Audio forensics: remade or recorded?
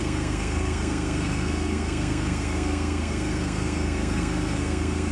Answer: remade